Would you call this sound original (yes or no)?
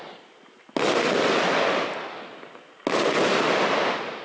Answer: yes